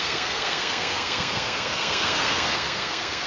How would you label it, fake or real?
fake